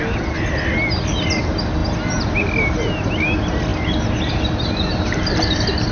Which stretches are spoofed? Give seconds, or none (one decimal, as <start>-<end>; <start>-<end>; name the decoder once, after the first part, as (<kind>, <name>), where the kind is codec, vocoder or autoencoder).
none